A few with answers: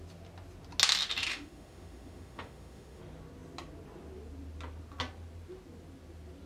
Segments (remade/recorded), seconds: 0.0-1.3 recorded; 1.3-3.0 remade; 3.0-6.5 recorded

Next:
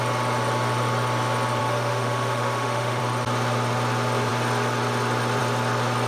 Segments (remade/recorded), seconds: 0.0-1.6 recorded; 1.6-3.0 remade; 3.0-6.1 recorded

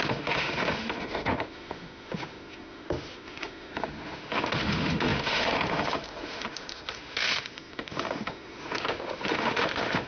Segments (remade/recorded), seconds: 0.0-10.1 remade

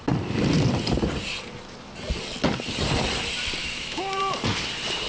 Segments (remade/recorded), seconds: 0.0-3.6 recorded; 3.6-4.2 remade; 4.2-5.1 recorded

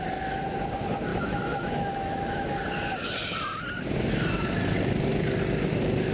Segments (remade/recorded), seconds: 0.0-1.1 recorded; 1.1-2.6 remade; 2.6-6.1 recorded